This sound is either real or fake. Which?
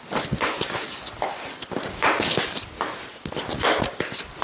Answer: real